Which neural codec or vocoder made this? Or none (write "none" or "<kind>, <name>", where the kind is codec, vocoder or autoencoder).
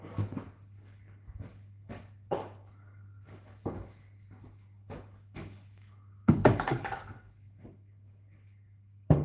codec, DAC